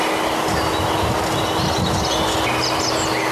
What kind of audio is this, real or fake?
real